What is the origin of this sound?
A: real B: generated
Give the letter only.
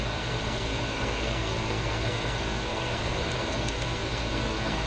B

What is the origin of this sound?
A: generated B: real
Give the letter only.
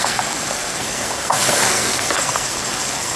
A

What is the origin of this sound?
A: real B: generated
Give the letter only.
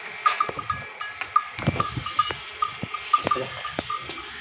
A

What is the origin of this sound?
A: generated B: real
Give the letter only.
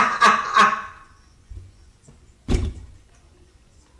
A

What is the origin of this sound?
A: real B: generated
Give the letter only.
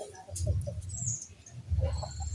A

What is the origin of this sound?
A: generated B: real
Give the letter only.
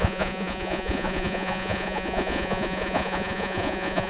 A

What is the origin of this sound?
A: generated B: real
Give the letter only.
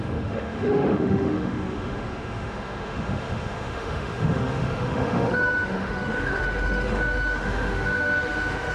A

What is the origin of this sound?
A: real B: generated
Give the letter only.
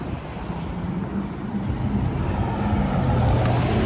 A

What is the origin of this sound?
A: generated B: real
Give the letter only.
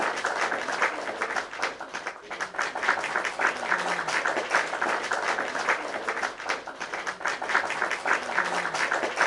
B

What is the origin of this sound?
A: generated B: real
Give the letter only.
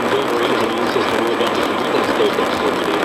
B